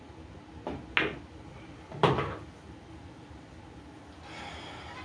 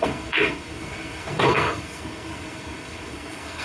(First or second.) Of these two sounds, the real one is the first